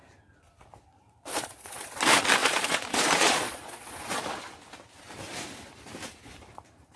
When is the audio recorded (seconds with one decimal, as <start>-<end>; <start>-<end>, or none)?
0.0-1.3; 2.0-2.4; 4.2-7.0